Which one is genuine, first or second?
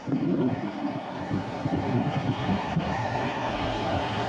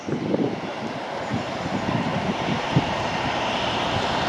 second